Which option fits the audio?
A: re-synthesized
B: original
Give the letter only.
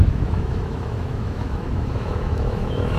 A